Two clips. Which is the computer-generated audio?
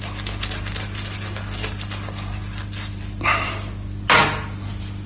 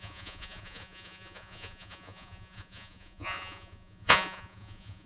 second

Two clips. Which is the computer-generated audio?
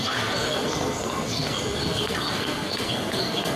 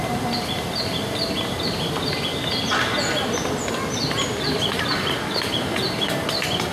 first